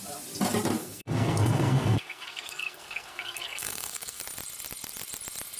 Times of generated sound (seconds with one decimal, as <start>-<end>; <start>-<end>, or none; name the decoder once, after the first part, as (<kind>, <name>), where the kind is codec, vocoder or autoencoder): 0.8-4.2 (codec, SNAC)

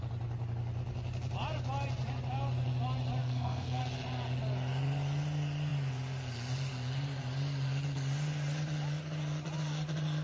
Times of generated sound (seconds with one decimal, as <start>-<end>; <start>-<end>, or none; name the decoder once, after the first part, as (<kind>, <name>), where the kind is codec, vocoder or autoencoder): 3.2-3.8 (codec, SNAC)

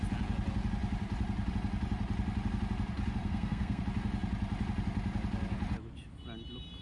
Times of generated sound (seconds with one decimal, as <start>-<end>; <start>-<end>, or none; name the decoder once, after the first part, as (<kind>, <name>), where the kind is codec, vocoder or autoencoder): 3.2-3.8 (codec, SNAC)

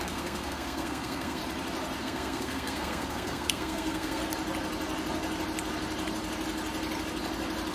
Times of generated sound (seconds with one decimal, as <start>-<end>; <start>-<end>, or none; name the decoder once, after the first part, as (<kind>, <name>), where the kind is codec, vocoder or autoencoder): 0.0-1.4 (codec, SNAC); 2.0-4.2